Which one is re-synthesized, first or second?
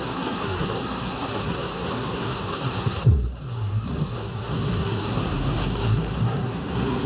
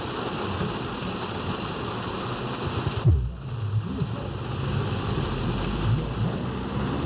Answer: first